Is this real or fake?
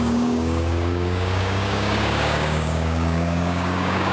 fake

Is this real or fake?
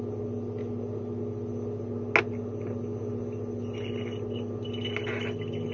real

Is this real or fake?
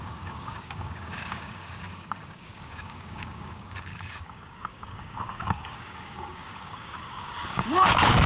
fake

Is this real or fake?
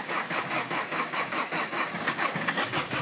fake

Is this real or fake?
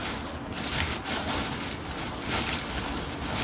real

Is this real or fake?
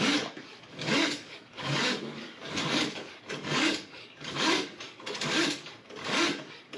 fake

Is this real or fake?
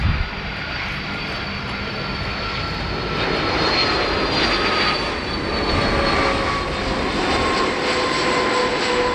real